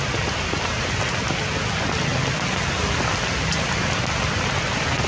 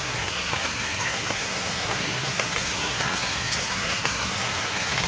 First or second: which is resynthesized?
second